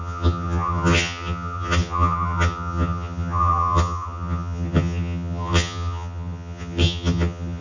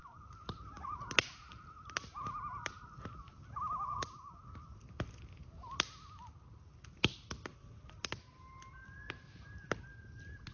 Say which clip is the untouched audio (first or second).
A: second